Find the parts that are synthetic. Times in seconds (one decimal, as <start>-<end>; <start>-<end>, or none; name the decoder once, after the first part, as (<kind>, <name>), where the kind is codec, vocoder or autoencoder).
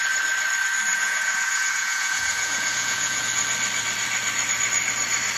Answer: 0.9-3.3 (vocoder, Vocos)